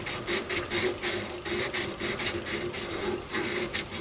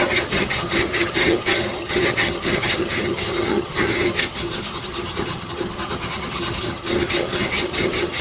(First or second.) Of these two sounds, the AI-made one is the second